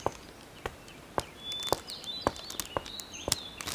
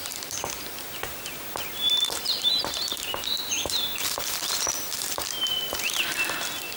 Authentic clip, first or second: first